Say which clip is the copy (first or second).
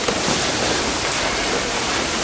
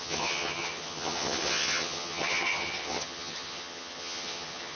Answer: second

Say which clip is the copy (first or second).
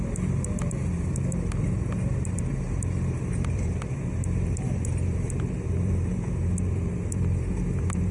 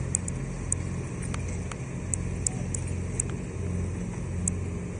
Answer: first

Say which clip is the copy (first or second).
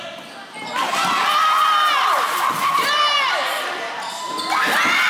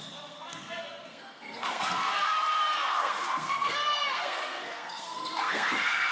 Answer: second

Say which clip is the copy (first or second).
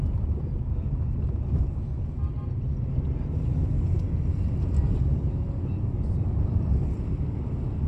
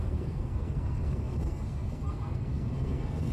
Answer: second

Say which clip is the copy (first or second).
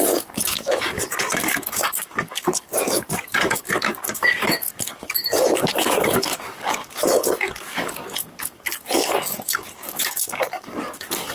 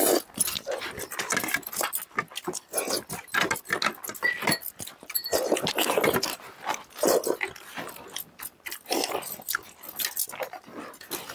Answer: first